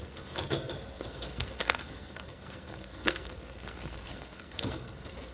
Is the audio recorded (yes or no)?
no